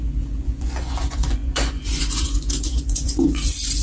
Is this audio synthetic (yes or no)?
yes